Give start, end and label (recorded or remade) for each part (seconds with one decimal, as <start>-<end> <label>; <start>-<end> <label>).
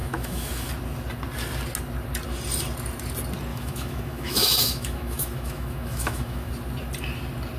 0.0-0.7 remade; 0.7-3.5 recorded; 3.5-6.5 remade; 6.5-7.6 recorded